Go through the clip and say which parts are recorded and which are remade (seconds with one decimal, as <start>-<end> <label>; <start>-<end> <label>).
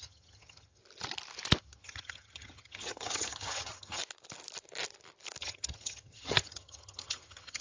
0.0-0.8 remade; 0.8-1.6 recorded; 1.6-4.0 remade; 4.0-5.4 recorded; 5.4-7.6 remade